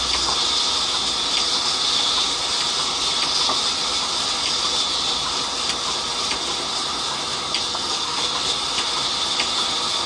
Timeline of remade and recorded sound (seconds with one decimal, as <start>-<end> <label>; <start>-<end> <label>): 0.0-7.7 recorded; 7.7-8.3 remade; 8.3-10.1 recorded